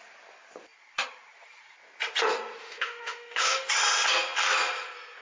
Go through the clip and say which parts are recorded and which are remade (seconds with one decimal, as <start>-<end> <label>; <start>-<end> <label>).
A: 0.0-2.6 recorded; 2.6-3.7 remade; 3.7-5.2 recorded

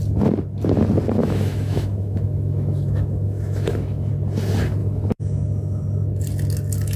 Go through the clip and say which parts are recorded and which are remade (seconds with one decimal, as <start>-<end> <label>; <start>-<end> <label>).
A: 0.0-1.2 recorded; 1.2-4.1 remade; 4.1-4.8 recorded; 4.8-5.8 remade; 5.8-7.0 recorded

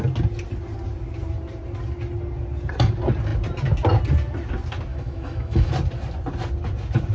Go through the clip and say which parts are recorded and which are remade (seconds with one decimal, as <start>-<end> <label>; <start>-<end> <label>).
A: 0.0-4.9 recorded; 4.9-5.7 remade; 5.7-7.1 recorded

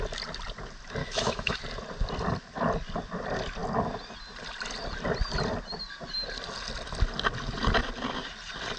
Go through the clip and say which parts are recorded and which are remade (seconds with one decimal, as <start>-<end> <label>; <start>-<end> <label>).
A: 0.0-1.0 recorded; 1.0-1.6 remade; 1.6-8.8 recorded

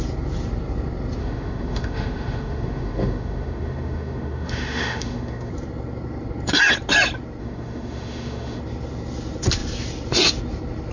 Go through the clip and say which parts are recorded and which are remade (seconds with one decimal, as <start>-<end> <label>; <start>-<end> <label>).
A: 0.0-1.2 recorded; 1.2-5.5 remade; 5.5-7.4 recorded; 7.4-8.6 remade; 8.6-10.9 recorded

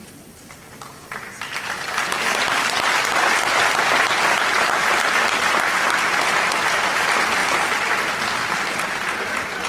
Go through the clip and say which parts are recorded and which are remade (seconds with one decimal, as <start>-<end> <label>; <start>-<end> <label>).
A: 0.0-9.7 recorded